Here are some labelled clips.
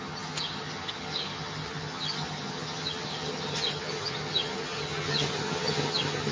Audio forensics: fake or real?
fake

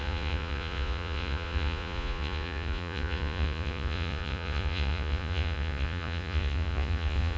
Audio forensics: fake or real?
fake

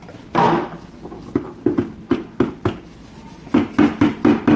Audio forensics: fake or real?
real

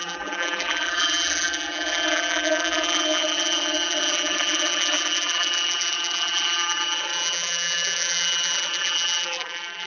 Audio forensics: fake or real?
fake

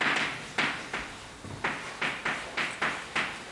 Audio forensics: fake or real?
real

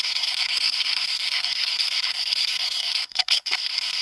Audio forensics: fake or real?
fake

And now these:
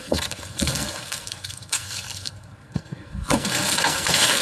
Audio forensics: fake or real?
fake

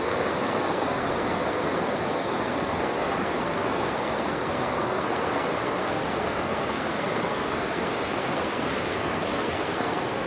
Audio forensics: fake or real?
fake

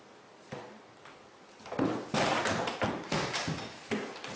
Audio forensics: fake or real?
real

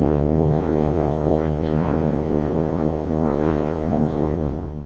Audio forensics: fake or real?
fake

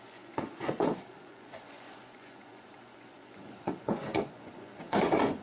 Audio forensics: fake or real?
fake